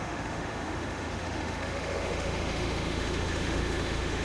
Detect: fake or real fake